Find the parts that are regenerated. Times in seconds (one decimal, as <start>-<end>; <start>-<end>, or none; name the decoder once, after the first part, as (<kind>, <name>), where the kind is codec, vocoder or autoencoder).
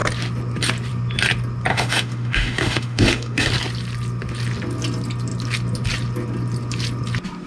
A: 1.7-3.5 (autoencoder, DAC-VAE)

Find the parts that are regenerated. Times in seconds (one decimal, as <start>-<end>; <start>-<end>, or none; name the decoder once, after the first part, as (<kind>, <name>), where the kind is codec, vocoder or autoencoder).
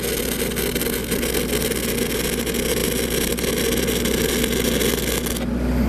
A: none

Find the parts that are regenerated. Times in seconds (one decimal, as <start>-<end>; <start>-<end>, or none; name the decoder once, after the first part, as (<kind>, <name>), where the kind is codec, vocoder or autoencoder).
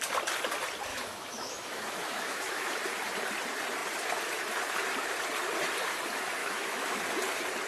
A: 0.9-2.7 (autoencoder, DAC-VAE); 6.4-7.0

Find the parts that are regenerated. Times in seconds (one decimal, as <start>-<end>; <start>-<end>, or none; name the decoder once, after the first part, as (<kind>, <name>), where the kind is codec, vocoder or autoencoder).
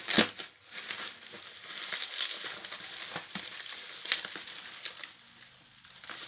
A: none